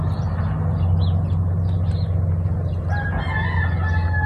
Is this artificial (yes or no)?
no